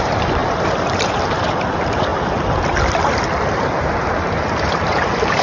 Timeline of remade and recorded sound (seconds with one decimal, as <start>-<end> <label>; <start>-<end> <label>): 0.0-2.1 remade; 2.1-4.0 recorded; 4.0-5.4 remade